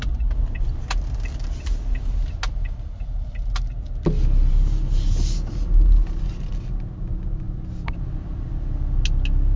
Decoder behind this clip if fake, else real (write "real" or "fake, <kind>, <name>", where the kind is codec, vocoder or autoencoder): real